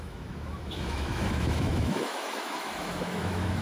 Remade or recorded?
remade